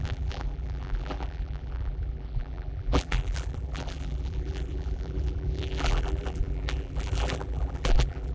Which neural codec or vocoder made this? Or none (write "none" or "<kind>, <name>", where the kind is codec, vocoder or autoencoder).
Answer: vocoder, BigVGAN v2